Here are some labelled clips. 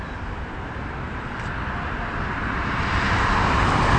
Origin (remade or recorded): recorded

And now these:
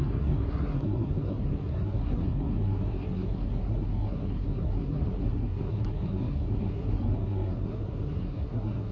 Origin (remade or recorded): remade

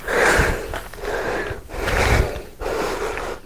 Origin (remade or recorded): recorded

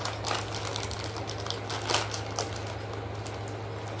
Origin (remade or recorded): recorded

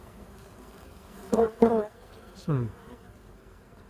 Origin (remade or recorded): remade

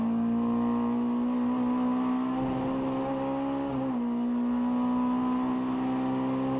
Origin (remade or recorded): recorded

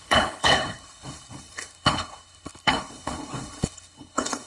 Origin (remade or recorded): remade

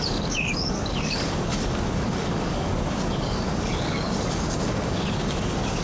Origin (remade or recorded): remade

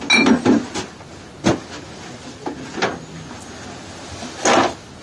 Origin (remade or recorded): recorded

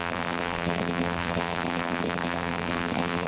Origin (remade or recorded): remade